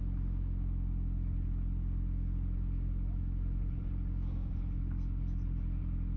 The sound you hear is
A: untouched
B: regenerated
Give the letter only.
A